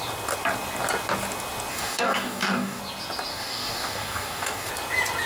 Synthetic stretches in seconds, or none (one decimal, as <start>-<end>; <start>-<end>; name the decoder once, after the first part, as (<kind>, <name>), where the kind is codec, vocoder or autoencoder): 1.7-2.8 (codec, DAC); 3.3-4.7